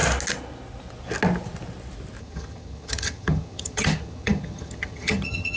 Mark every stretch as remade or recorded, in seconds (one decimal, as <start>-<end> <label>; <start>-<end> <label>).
0.0-2.2 recorded; 2.2-5.6 remade